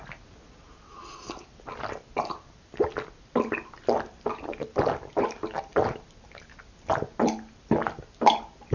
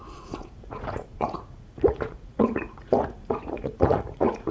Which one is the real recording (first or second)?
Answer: first